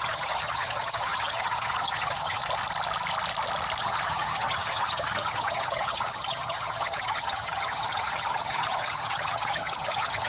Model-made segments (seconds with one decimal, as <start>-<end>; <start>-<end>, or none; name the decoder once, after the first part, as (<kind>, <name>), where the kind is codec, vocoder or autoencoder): 0.0-2.4 (vocoder, HiFi-GAN); 3.8-10.3